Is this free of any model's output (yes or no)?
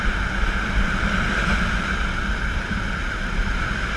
yes